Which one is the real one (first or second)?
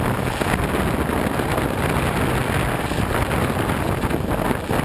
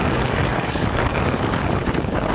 first